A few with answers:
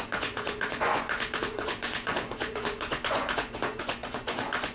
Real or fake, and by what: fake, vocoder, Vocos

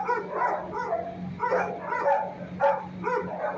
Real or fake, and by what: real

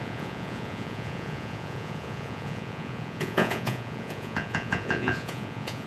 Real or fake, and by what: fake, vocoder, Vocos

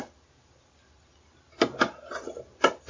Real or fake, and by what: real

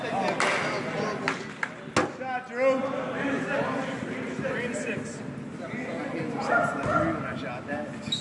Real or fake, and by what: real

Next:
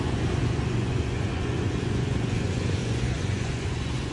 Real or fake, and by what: fake, vocoder, Vocos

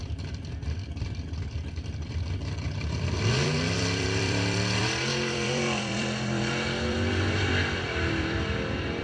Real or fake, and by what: fake, vocoder, BigVGAN v2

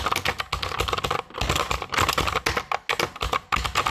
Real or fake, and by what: real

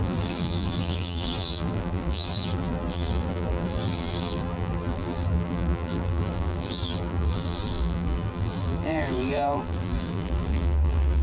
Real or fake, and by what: fake, vocoder, BigVGAN v2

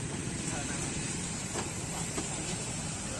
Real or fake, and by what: real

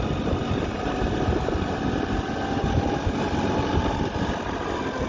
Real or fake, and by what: real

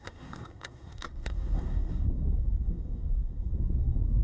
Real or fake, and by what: fake, codec, SNAC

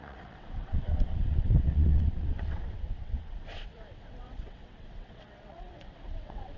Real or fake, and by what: fake, vocoder, WaveNeXt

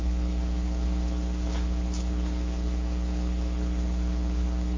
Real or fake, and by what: fake, codec, HILCodec